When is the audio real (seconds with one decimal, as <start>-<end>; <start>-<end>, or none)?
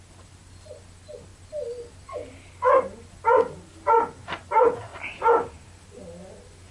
0.0-6.7